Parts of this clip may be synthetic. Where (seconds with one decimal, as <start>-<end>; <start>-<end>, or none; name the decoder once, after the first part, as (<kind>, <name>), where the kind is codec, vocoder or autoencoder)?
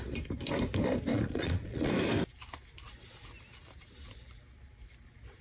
1.1-1.9 (vocoder, Vocos)